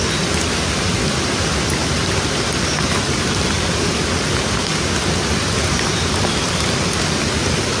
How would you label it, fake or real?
real